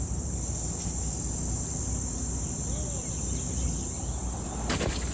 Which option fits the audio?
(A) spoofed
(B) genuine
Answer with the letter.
B